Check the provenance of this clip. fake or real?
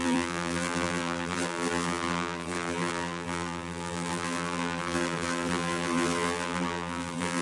fake